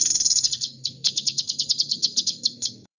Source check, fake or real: fake